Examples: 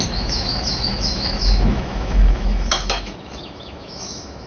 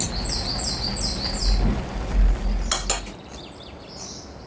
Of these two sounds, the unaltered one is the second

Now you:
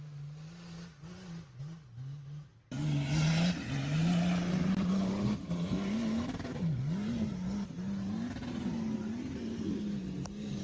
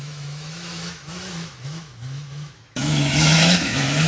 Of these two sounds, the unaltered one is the first